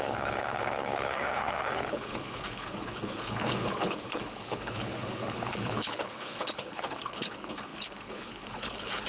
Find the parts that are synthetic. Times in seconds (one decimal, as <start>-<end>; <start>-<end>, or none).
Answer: 0.0-9.1